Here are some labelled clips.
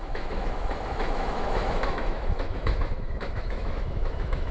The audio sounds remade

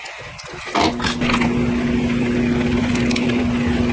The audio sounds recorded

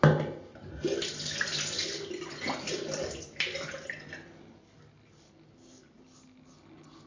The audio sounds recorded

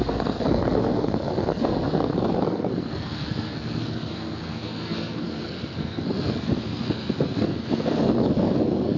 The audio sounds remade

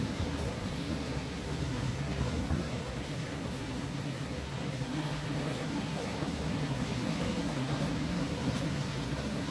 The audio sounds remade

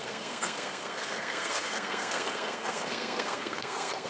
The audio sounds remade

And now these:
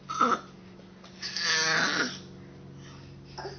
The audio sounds recorded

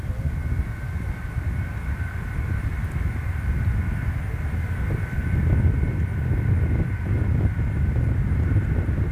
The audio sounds recorded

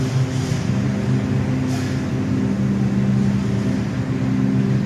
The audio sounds recorded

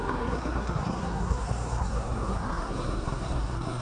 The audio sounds remade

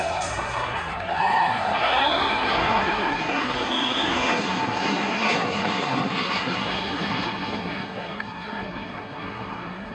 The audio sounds remade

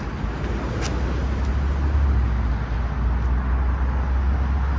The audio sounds recorded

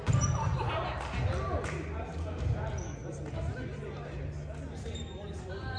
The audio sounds recorded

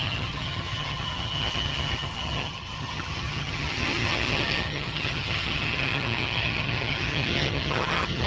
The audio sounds remade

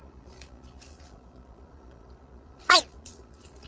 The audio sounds remade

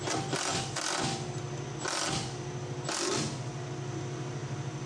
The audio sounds recorded